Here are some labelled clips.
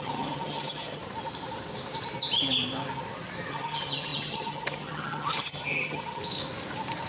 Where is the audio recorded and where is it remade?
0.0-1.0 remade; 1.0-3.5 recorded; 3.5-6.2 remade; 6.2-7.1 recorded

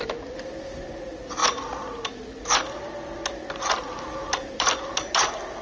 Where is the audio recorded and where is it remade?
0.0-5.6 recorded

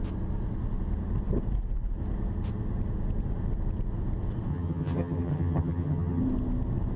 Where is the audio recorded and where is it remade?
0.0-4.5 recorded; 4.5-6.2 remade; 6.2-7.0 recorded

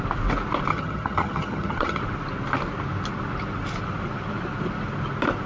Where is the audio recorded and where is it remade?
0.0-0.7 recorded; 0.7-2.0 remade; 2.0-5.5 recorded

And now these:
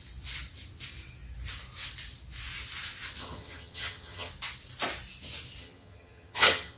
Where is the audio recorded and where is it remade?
0.0-3.2 recorded; 3.2-4.3 remade; 4.3-5.6 recorded; 5.6-6.8 remade

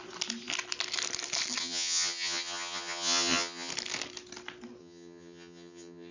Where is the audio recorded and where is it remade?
0.0-1.6 recorded; 1.6-3.7 remade; 3.7-4.8 recorded; 4.8-6.1 remade

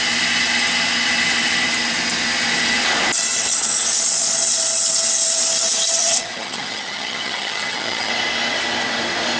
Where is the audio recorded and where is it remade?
0.0-6.0 recorded; 6.0-8.1 remade; 8.1-9.4 recorded